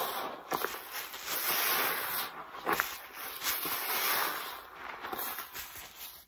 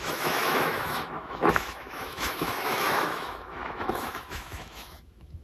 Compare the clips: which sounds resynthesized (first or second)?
second